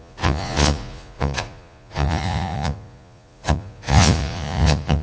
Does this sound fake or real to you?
fake